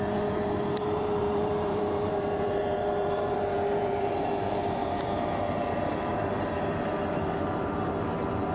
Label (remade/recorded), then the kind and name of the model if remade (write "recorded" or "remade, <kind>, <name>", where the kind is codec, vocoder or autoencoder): remade, vocoder, BigVGAN v2